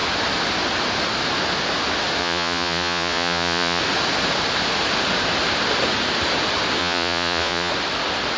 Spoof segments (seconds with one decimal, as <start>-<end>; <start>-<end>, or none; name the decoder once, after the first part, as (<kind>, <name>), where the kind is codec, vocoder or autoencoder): 2.2-3.8 (vocoder, Vocos); 6.8-7.7